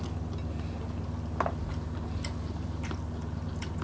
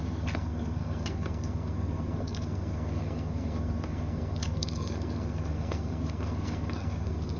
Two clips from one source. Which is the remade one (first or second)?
second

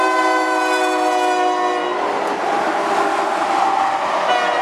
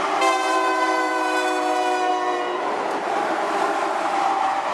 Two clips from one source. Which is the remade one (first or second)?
second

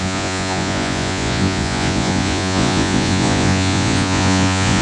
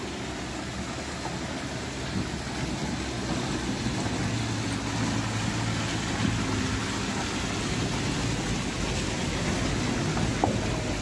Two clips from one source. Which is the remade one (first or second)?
first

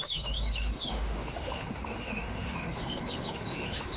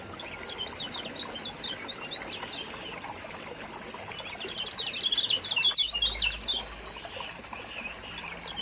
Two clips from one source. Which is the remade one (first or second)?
first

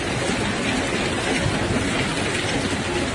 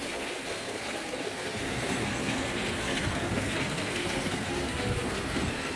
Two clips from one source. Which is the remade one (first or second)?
second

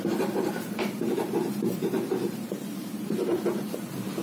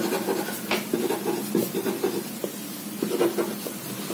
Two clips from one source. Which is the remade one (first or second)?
first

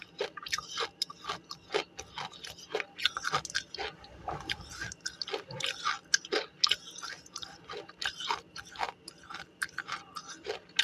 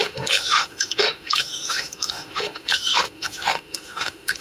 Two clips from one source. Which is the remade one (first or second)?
second